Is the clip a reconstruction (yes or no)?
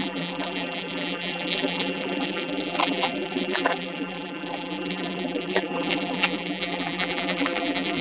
yes